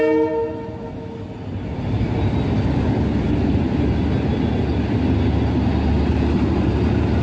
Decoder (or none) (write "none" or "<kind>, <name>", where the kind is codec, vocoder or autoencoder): none